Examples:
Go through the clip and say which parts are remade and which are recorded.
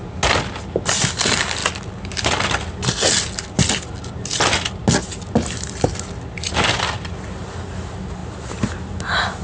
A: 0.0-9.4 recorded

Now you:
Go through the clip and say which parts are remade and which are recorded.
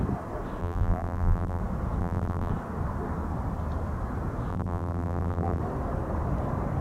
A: 0.0-0.6 recorded; 0.6-1.6 remade; 1.6-2.0 recorded; 2.0-2.5 remade; 2.5-4.5 recorded; 4.5-5.6 remade; 5.6-6.8 recorded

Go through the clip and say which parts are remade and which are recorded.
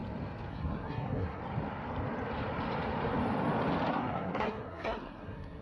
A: 0.0-0.5 recorded; 0.5-1.4 remade; 1.4-3.9 recorded; 3.9-5.6 remade